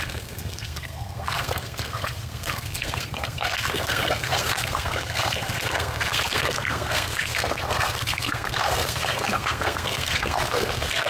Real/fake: fake